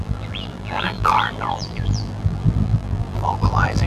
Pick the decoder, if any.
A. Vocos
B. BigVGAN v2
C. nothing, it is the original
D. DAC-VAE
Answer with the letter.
B